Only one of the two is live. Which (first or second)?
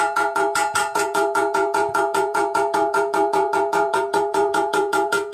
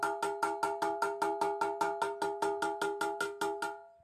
second